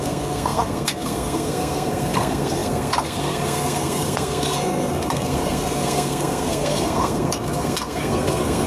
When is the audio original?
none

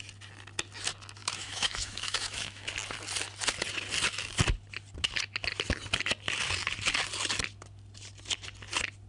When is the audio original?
0.0-1.2; 2.7-9.1

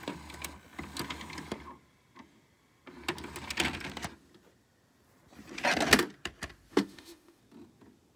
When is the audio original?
0.0-6.7; 7.4-8.2